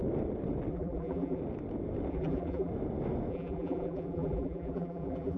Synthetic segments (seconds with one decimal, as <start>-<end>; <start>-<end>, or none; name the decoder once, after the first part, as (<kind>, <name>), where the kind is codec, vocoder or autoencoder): 0.7-1.4 (vocoder, BigVGAN v2); 2.1-2.7; 3.3-5.4